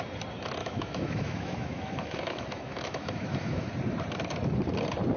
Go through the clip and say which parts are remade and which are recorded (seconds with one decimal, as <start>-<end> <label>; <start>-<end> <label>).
0.0-0.6 recorded; 0.6-3.7 remade; 3.7-5.2 recorded